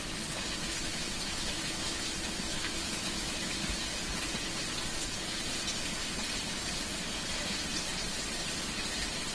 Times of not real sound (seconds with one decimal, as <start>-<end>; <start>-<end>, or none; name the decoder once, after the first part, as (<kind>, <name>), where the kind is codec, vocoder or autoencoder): 0.9-3.5 (autoencoder, DAC-VAE)